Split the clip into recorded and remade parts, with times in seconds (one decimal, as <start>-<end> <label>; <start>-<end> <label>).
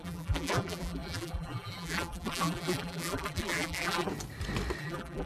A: 0.0-4.1 remade; 4.1-4.8 recorded; 4.8-5.3 remade